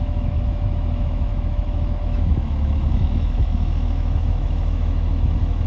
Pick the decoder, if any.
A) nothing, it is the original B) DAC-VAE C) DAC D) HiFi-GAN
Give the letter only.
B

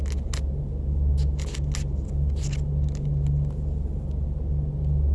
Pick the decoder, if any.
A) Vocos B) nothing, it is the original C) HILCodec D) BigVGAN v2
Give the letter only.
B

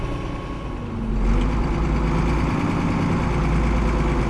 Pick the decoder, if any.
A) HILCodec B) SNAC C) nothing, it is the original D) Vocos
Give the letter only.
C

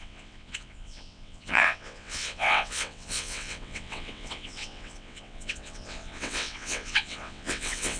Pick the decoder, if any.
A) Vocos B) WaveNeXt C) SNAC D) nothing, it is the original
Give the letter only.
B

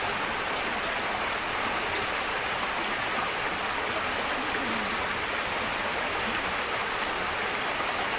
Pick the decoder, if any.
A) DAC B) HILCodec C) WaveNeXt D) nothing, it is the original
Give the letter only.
D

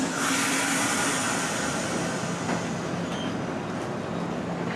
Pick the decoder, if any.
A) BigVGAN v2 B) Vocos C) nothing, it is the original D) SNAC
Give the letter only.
C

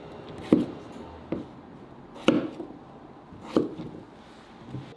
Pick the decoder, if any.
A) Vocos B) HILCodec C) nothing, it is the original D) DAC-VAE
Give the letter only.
C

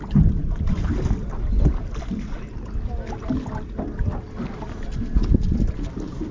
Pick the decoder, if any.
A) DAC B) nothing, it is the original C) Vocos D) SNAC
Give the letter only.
B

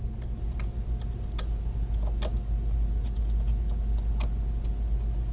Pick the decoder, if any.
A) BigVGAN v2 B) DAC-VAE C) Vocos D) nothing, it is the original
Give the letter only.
D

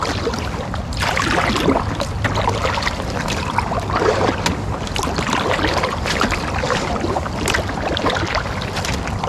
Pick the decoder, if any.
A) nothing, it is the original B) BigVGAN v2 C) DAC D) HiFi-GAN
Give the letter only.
A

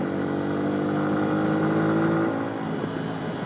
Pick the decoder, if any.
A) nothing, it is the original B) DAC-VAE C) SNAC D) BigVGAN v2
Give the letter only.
A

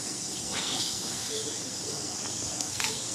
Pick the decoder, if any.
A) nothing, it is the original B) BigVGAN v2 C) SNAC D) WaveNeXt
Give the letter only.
C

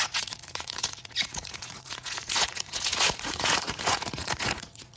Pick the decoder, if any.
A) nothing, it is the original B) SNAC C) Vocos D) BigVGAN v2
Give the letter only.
C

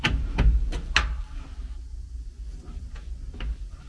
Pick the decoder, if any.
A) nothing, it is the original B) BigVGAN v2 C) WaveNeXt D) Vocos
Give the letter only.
A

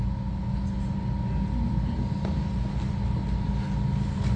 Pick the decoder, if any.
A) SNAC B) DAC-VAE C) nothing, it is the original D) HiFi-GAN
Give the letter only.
C